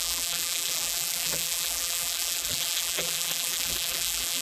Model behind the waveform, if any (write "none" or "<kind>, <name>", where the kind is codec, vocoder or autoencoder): vocoder, BigVGAN v2